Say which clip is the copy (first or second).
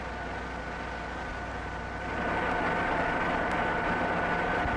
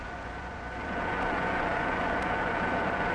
second